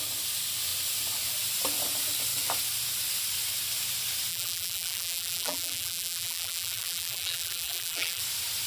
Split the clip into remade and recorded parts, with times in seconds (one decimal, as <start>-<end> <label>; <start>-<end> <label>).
0.0-4.3 recorded; 4.3-8.2 remade; 8.2-8.7 recorded